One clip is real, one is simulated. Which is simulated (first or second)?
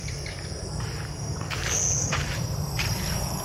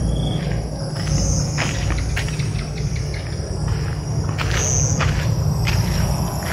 first